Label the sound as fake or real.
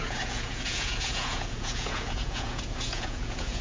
fake